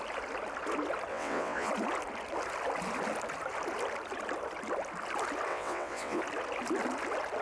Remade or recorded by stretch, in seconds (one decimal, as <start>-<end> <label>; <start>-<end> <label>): 0.0-1.1 recorded; 1.1-1.7 remade; 1.7-5.5 recorded; 5.5-6.2 remade; 6.2-7.4 recorded